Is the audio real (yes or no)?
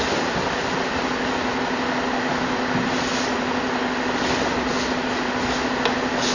yes